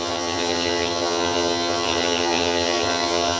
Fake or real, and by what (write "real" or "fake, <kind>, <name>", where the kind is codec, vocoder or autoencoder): fake, vocoder, HiFi-GAN